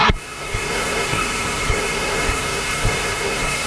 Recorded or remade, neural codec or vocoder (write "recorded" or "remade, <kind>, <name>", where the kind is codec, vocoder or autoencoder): remade, codec, SNAC